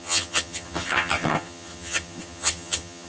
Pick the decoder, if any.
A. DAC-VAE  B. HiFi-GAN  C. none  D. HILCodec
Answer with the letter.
B